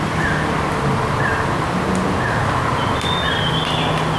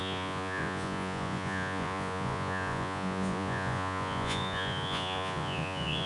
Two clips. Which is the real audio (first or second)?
first